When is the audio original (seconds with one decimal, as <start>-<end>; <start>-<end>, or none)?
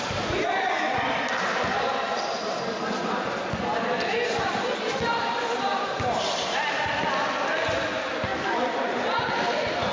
0.0-9.9